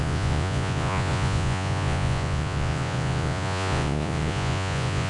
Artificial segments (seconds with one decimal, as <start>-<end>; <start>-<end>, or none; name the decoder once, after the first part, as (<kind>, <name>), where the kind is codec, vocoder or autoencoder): 0.0-5.1 (vocoder, Vocos)